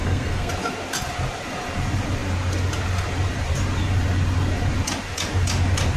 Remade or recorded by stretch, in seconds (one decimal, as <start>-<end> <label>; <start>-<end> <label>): 0.0-0.5 remade; 0.5-6.0 recorded